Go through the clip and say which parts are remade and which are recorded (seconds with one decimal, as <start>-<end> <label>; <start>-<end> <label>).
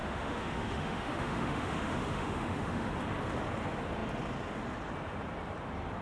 0.0-2.9 remade; 2.9-6.0 recorded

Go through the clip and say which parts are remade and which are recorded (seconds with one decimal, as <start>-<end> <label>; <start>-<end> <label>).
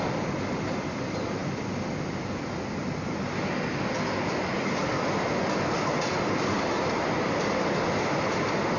0.0-8.8 recorded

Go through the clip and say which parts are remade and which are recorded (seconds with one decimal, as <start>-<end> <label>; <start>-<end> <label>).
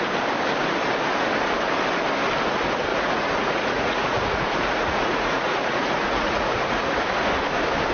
0.0-2.9 recorded; 2.9-7.0 remade; 7.0-7.9 recorded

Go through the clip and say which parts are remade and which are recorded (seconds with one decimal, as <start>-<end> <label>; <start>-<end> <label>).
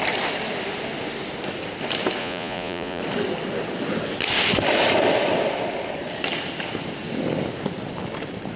0.0-2.2 recorded; 2.2-3.0 remade; 3.0-8.6 recorded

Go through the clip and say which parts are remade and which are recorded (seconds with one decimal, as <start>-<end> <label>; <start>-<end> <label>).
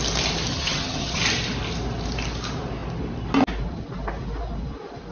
0.0-0.5 recorded; 0.5-1.2 remade; 1.2-5.1 recorded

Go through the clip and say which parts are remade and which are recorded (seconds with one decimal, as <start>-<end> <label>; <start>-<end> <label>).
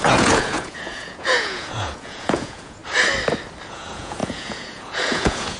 0.0-2.8 remade; 2.8-3.7 recorded; 3.7-5.6 remade